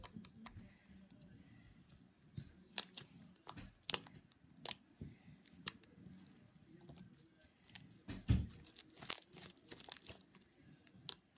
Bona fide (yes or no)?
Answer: yes